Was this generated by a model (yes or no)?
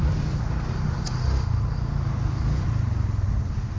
no